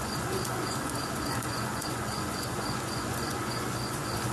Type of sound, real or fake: fake